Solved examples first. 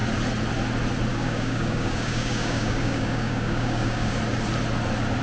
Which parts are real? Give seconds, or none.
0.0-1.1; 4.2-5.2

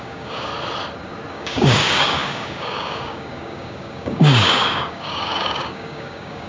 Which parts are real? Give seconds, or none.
0.5-1.3

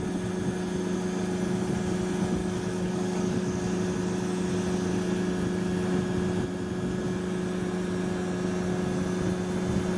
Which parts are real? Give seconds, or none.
0.0-2.4; 3.6-10.0

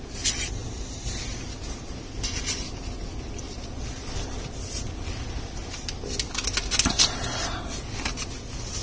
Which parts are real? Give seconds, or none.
0.0-8.8

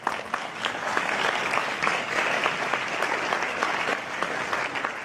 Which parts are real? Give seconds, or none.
0.0-0.4; 2.4-3.6; 4.4-5.0

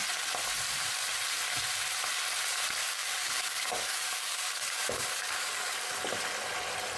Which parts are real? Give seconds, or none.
0.0-2.8; 5.9-7.0